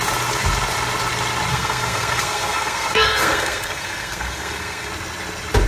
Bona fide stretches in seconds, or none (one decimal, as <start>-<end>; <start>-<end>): 0.0-1.5; 4.9-5.7